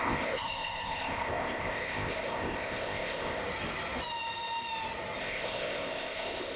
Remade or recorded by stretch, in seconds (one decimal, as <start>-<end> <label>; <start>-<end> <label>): 0.0-3.4 remade; 3.4-5.2 recorded; 5.2-6.6 remade